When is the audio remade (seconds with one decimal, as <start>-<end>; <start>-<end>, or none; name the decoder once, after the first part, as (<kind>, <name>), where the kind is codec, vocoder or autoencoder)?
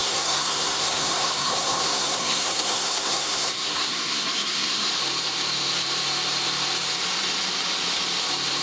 0.0-4.9 (codec, SNAC)